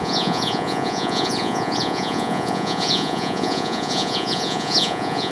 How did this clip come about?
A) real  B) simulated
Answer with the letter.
B